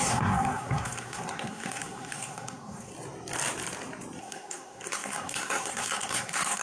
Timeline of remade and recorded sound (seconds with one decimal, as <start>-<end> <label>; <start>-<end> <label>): 0.0-2.9 remade; 2.9-4.2 recorded; 4.2-6.6 remade